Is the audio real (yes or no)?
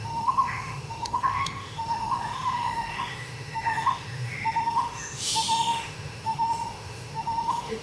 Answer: no